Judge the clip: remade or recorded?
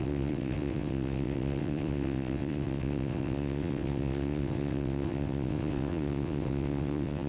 remade